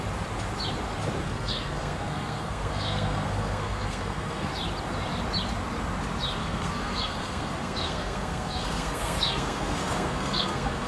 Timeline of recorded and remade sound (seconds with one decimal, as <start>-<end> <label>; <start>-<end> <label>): 0.0-1.2 recorded; 1.2-4.5 remade; 4.5-6.4 recorded; 6.4-10.9 remade